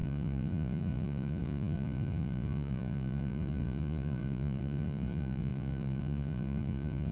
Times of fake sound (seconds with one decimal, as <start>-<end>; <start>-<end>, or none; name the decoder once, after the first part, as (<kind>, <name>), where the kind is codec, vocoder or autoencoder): 0.0-7.1 (vocoder, Vocos)